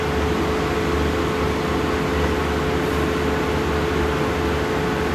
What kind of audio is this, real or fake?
real